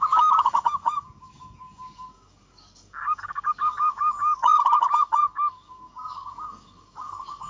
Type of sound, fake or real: fake